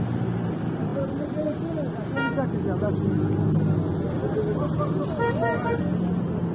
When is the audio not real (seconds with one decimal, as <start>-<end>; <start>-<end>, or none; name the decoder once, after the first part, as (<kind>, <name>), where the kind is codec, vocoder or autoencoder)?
none